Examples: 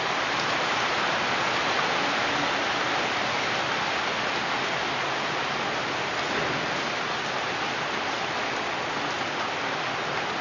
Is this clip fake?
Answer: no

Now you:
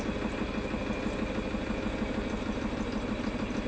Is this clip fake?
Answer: no